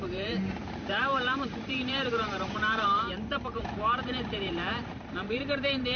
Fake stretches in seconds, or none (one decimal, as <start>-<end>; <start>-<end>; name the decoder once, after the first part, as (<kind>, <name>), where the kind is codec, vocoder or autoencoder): 0.0-6.0 (vocoder, BigVGAN v2)